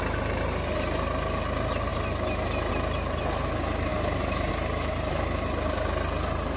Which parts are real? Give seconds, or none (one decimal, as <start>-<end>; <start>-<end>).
0.0-6.6